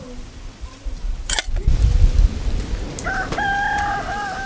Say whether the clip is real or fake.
real